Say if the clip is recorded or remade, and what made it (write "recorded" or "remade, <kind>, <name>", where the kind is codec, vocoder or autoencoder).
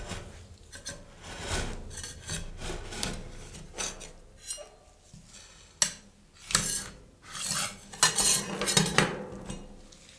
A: recorded